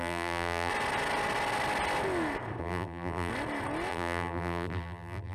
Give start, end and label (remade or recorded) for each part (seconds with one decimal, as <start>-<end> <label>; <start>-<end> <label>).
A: 0.0-0.7 remade; 0.7-2.6 recorded; 2.6-3.3 remade; 3.3-3.9 recorded; 3.9-5.3 remade